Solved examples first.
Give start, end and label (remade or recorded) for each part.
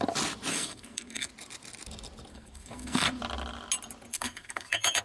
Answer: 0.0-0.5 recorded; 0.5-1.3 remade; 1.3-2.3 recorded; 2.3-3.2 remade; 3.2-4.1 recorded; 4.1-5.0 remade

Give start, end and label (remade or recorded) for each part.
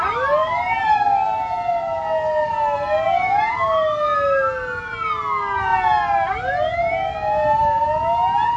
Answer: 0.0-8.6 recorded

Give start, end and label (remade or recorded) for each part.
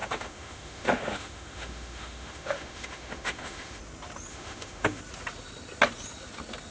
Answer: 0.0-3.8 remade; 3.8-4.3 recorded; 4.3-5.0 remade; 5.0-6.7 recorded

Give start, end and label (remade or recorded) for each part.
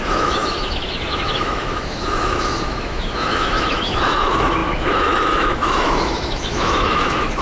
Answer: 0.0-7.4 remade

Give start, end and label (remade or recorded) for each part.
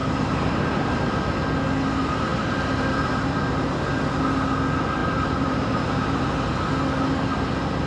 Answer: 0.0-1.3 remade; 1.3-2.3 recorded; 2.3-3.2 remade; 3.2-5.0 recorded; 5.0-6.6 remade; 6.6-7.9 recorded